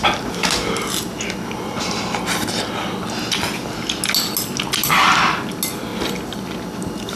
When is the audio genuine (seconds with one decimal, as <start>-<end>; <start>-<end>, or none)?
0.0-7.2